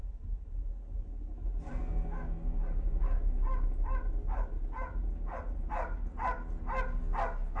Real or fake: real